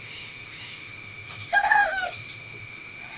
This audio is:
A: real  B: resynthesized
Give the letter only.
B